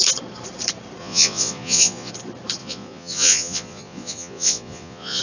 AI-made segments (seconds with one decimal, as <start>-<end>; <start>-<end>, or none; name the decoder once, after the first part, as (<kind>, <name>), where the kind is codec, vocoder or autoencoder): 1.0-2.1 (vocoder, Vocos); 2.6-5.2